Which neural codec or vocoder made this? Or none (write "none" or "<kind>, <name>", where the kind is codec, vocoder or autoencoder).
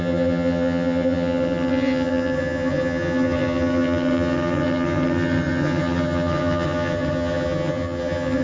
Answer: vocoder, HiFi-GAN